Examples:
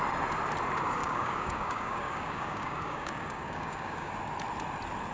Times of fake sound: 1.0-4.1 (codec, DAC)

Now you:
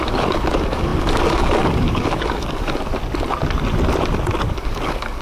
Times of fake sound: 0.0-2.9 (codec, DAC); 4.4-5.2

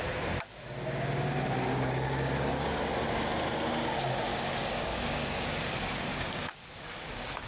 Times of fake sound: 1.7-2.8 (codec, DAC); 4.3-5.6; 6.1-6.6

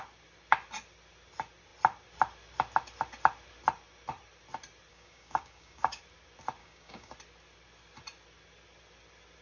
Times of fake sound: 4.9-6.0 (codec, DAC); 6.6-7.1

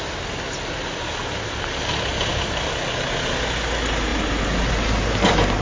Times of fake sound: none

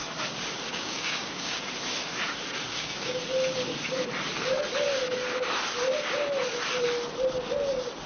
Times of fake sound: 0.7-1.6 (codec, DAC); 2.7-3.2